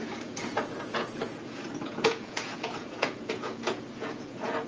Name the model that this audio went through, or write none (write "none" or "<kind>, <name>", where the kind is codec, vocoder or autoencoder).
vocoder, Vocos